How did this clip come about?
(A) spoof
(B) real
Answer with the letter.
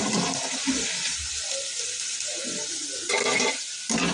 B